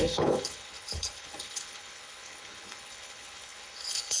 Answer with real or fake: fake